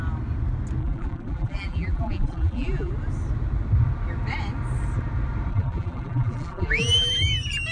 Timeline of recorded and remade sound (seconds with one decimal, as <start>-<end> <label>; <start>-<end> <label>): 0.0-0.8 recorded; 0.8-2.9 remade; 2.9-5.5 recorded; 5.5-7.1 remade; 7.1-7.7 recorded